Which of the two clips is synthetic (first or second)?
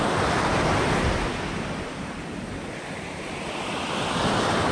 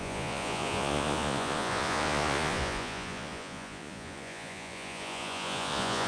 second